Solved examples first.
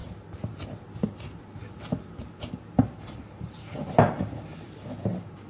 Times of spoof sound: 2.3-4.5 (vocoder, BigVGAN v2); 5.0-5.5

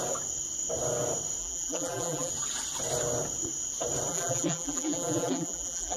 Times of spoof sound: 1.4-2.3 (vocoder, BigVGAN v2); 4.1-6.0

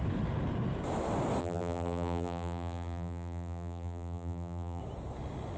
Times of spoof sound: 1.4-4.8 (vocoder, BigVGAN v2)

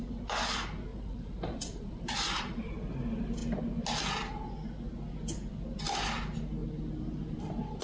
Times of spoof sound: 0.9-2.7 (vocoder, BigVGAN v2)

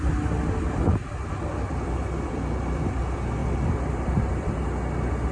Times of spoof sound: 0.9-3.0 (vocoder, BigVGAN v2); 3.4-4.6